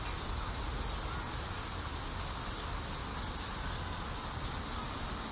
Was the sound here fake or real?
real